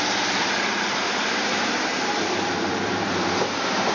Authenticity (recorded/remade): remade